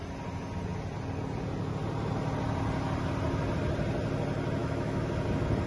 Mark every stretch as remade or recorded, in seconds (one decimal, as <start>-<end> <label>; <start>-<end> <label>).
0.0-4.6 recorded; 4.6-5.1 remade; 5.1-5.7 recorded